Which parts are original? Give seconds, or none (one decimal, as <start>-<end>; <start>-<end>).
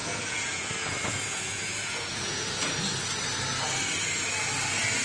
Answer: 2.7-5.0